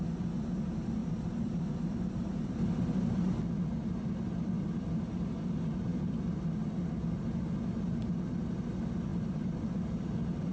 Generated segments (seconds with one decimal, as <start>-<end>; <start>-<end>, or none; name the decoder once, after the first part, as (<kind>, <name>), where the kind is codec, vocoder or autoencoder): 1.0-5.5 (vocoder, BigVGAN v2); 9.1-10.5